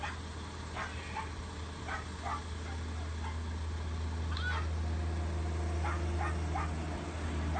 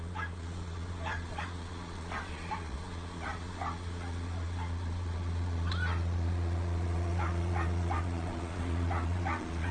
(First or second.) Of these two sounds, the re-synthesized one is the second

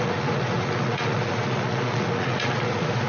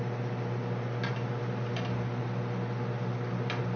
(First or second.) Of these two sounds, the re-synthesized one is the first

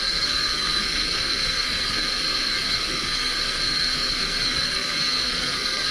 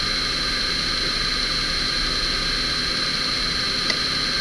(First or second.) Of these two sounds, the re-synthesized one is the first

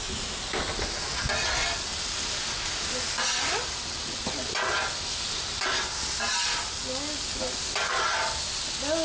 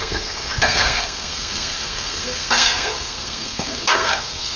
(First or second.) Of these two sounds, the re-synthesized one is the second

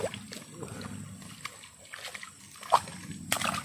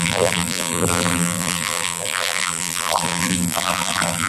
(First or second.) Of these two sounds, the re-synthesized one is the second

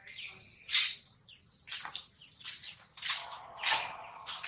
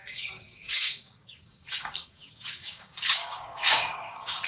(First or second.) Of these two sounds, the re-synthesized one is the second